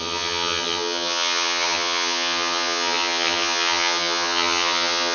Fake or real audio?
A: fake